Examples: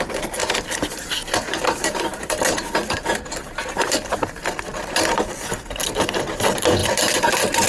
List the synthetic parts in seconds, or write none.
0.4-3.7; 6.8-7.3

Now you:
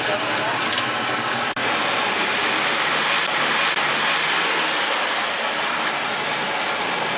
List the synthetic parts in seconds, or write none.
none

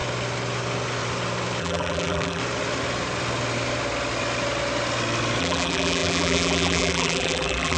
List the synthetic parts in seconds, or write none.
1.6-2.4; 5.4-7.8

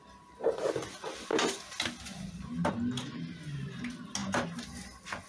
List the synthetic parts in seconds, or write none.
none